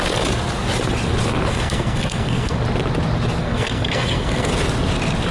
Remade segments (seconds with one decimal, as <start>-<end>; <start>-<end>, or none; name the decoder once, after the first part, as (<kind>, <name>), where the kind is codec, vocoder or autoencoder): 1.5-2.6 (codec, SNAC); 3.4-4.5